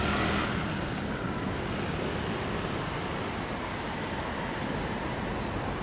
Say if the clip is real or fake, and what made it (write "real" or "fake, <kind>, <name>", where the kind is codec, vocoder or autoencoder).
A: real